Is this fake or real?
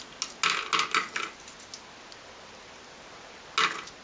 real